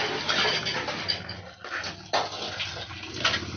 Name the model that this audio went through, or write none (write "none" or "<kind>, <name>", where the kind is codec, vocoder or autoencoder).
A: none